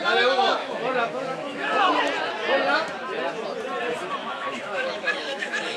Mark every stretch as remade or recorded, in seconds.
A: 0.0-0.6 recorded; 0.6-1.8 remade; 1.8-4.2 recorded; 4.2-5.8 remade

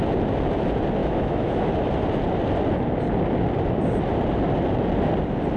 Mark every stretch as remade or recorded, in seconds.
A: 0.0-1.0 recorded; 1.0-1.7 remade; 1.7-5.6 recorded